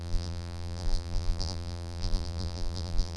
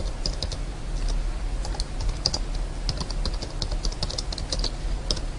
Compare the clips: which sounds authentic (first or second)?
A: second